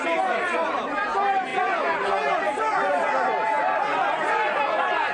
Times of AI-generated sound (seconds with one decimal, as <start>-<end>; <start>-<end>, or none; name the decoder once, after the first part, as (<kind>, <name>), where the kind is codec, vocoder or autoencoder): none